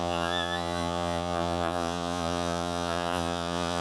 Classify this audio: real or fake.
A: fake